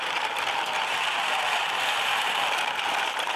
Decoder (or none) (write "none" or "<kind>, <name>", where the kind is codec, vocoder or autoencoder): vocoder, BigVGAN v2